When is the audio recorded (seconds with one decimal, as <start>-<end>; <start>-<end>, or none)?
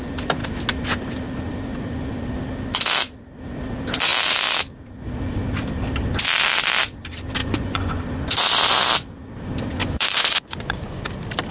0.0-7.4; 8.0-9.8; 11.0-11.5